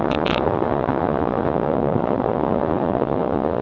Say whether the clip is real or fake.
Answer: fake